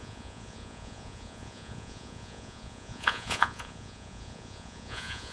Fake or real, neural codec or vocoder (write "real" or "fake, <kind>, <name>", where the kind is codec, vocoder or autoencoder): fake, vocoder, Vocos